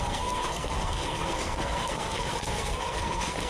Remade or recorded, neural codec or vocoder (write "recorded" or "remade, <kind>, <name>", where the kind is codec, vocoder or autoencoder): remade, codec, SNAC